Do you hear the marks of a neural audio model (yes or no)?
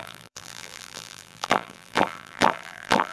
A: yes